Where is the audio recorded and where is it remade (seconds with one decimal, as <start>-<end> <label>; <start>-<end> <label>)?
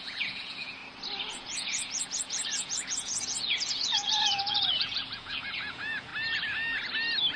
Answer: 0.0-0.8 remade; 0.8-1.3 recorded; 1.3-6.1 remade; 6.1-7.4 recorded